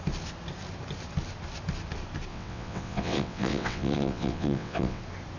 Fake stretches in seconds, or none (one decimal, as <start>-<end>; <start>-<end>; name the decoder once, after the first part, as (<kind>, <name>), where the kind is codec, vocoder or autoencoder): 2.3-5.0 (vocoder, WaveNeXt)